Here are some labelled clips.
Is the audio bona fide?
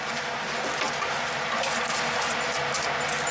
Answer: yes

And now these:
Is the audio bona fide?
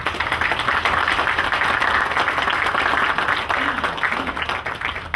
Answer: yes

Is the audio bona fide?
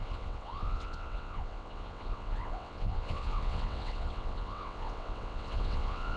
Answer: no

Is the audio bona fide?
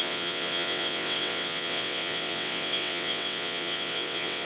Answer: no